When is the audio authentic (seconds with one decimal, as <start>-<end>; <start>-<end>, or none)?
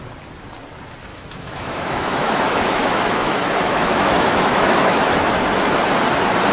0.0-1.1; 5.0-6.5